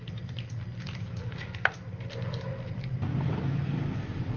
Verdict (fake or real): fake